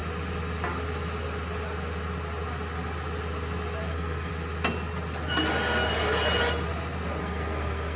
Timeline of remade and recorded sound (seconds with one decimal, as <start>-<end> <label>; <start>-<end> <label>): 0.0-3.9 recorded; 3.9-4.3 remade; 4.3-7.2 recorded; 7.2-8.0 remade